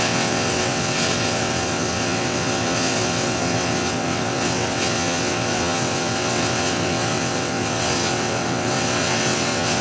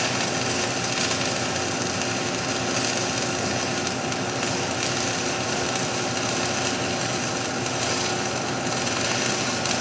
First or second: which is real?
second